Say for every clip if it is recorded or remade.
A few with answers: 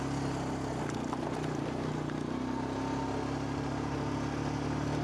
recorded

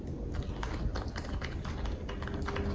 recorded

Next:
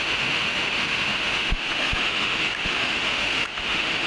remade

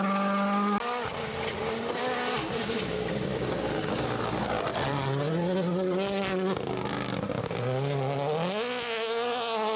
recorded